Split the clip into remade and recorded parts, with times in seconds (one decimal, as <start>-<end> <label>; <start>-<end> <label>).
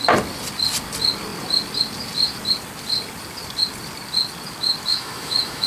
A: 0.0-4.9 recorded; 4.9-5.7 remade